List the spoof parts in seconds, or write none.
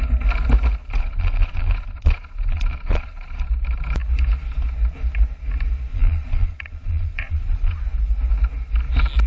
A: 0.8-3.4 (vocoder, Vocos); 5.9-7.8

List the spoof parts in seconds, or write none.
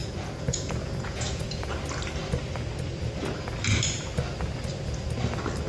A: 0.0-1.7 (vocoder, Vocos)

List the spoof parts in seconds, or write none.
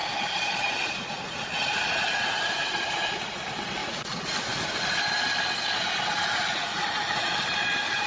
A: 0.0-3.4 (vocoder, Vocos); 3.8-4.4; 6.5-7.3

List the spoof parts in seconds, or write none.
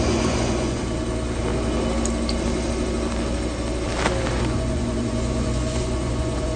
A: 0.0-0.8 (vocoder, Vocos); 4.3-6.6